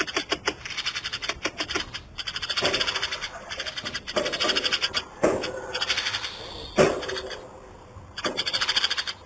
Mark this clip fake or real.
real